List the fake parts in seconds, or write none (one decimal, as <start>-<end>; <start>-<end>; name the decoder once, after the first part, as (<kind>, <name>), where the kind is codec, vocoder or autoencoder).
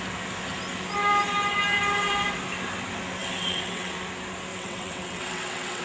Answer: 3.2-3.9 (vocoder, WaveNeXt); 4.5-5.8